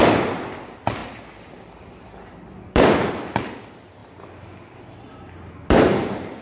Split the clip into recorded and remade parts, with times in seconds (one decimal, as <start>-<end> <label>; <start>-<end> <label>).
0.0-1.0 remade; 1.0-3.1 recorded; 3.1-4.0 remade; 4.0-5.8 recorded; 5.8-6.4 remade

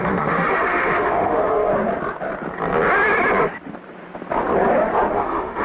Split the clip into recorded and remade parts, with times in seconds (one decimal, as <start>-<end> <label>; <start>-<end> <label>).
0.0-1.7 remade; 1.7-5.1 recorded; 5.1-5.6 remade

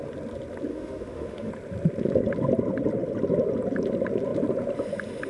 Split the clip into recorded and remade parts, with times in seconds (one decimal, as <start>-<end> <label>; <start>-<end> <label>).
0.0-0.7 recorded; 0.7-1.5 remade; 1.5-5.3 recorded

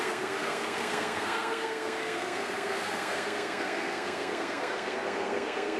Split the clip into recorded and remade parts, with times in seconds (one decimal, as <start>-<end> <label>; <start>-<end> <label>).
0.0-5.8 remade

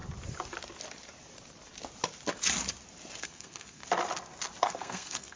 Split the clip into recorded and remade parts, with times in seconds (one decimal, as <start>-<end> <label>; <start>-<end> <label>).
0.0-3.2 recorded; 3.2-3.8 remade; 3.8-4.6 recorded; 4.6-5.4 remade

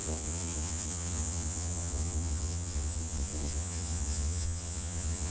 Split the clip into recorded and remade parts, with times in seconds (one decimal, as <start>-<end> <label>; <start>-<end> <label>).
0.0-5.3 remade